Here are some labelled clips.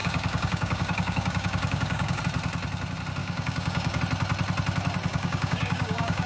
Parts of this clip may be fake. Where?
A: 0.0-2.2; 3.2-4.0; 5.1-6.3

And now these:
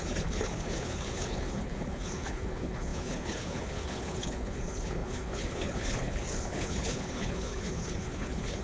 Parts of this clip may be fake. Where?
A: 0.0-8.6

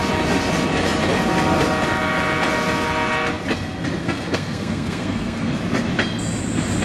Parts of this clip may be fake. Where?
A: 4.0-5.5

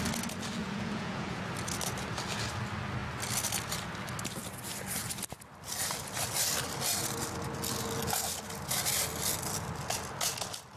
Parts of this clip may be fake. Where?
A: 0.6-1.4